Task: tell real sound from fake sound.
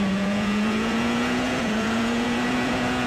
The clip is fake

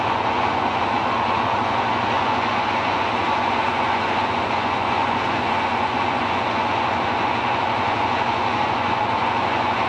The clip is fake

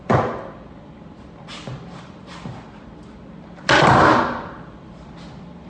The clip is fake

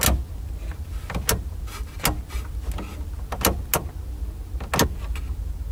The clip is real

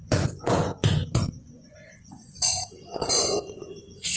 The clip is fake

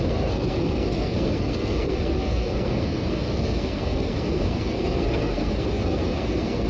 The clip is fake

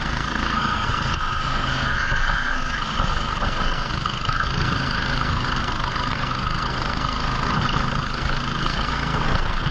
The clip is fake